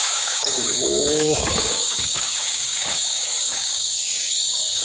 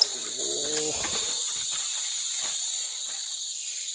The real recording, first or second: second